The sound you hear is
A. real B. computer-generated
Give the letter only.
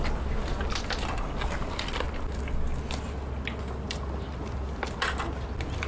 A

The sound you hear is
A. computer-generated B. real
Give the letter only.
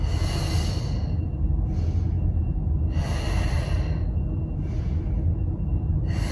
B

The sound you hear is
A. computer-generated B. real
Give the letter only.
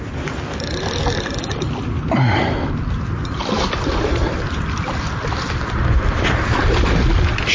B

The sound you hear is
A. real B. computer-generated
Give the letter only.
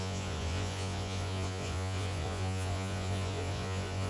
B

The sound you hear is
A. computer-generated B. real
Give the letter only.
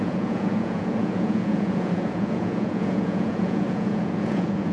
A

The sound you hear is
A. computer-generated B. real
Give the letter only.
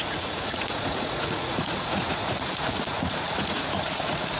A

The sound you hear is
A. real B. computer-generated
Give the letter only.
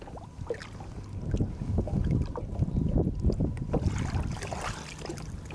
A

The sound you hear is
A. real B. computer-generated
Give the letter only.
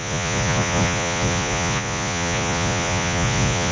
B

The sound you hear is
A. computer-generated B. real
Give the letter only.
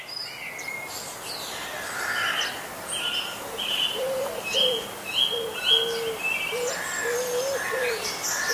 B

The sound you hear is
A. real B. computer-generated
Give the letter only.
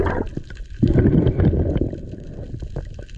A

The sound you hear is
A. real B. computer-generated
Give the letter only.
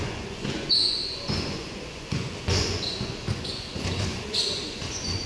B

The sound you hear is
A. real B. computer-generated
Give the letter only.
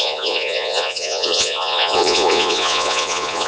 B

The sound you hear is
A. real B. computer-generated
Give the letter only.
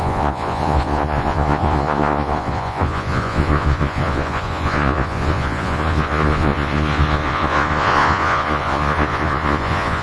B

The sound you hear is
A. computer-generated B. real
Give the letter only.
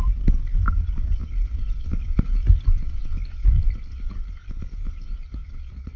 B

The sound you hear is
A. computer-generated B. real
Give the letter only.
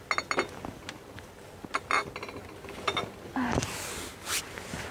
B